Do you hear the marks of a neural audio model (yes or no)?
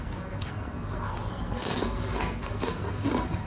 yes